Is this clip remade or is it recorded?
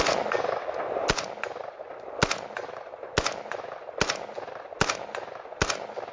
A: recorded